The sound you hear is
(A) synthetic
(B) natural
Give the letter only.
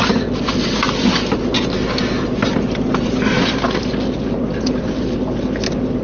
B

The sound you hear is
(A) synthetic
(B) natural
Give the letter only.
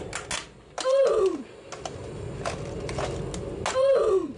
B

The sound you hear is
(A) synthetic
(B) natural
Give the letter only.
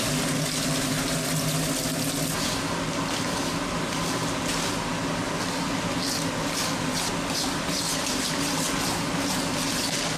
B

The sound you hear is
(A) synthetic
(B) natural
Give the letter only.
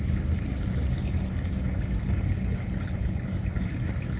B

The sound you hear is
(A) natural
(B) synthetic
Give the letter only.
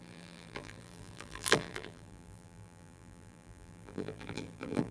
B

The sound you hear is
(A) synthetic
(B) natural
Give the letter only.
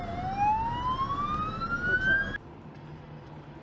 B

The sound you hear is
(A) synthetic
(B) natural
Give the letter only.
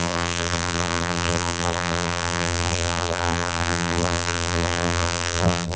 A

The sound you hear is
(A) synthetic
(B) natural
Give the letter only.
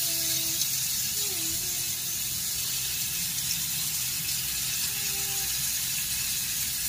B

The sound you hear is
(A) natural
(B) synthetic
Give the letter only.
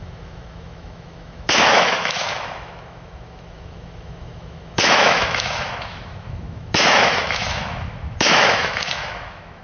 B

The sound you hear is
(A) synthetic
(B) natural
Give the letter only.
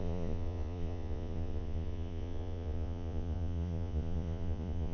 A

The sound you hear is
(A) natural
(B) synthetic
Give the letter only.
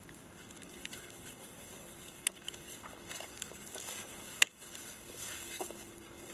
B